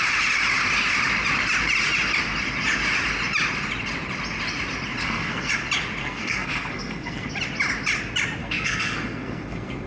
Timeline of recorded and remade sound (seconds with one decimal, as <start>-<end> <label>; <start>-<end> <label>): 0.0-5.0 recorded; 5.0-5.5 remade; 5.5-6.0 recorded; 6.0-7.3 remade; 7.3-8.4 recorded; 8.4-9.9 remade